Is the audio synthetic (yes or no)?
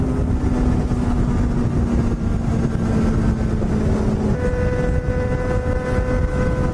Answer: no